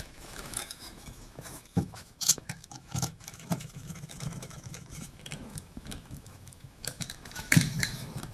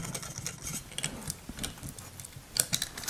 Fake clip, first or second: first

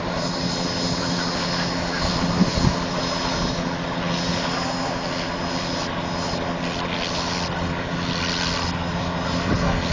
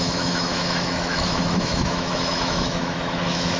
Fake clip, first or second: second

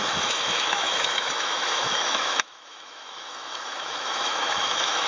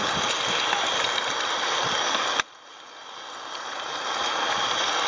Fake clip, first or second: first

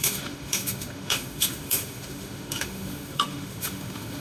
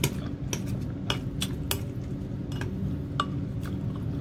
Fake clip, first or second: first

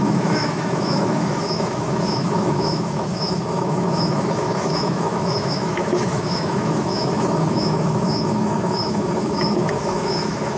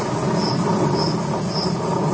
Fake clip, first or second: first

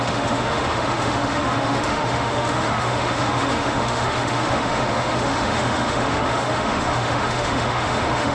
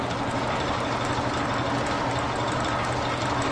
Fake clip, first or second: first